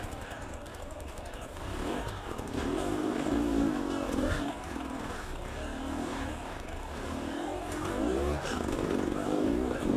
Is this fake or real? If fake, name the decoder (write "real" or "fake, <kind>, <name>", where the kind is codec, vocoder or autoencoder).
fake, codec, DAC